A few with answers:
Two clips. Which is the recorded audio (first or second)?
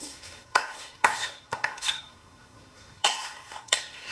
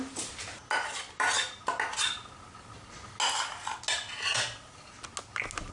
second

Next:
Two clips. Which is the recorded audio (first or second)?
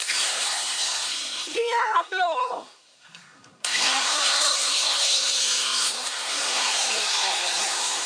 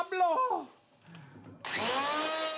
second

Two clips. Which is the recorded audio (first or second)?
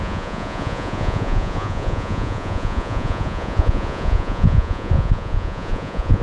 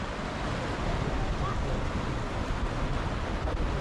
second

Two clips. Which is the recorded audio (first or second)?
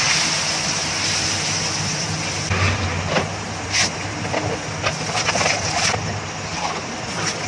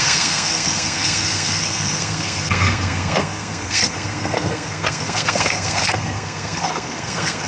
first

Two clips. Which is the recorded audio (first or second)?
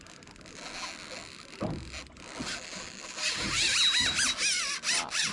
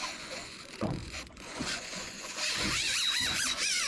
first